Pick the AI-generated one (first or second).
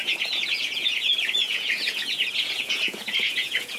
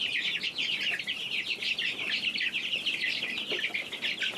first